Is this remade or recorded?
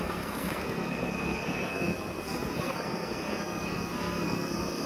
remade